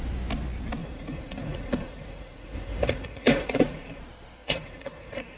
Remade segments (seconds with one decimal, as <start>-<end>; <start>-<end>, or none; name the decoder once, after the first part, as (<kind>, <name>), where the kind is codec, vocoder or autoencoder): 0.8-4.0 (vocoder, Vocos); 4.4-5.4